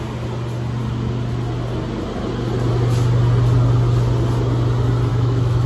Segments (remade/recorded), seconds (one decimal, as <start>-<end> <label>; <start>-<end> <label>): 0.0-5.1 recorded; 5.1-5.7 remade